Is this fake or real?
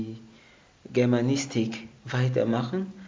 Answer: real